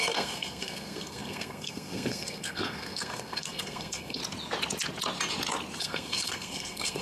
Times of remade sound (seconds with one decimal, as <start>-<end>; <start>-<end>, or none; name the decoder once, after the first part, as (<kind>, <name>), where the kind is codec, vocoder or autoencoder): 0.0-4.2 (codec, SNAC); 5.8-7.0